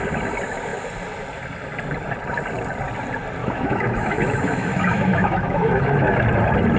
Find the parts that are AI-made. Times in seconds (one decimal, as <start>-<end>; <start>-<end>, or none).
3.4-6.2